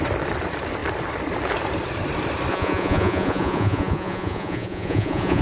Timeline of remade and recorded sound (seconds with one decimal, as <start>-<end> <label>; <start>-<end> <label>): 0.0-2.5 recorded; 2.5-5.4 remade

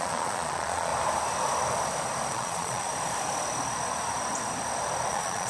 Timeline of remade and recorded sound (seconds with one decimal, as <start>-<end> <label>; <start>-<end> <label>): 0.0-0.9 remade; 0.9-2.3 recorded; 2.3-2.9 remade; 2.9-5.1 recorded; 5.1-5.5 remade

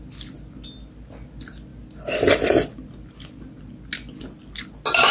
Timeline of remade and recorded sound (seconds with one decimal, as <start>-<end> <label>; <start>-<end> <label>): 0.0-5.1 recorded